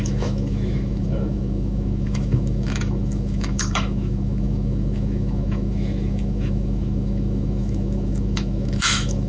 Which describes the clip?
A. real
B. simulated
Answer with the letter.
B